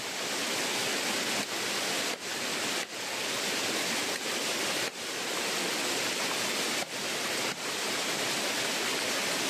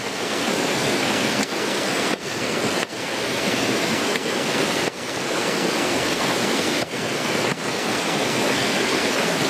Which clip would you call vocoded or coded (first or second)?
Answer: second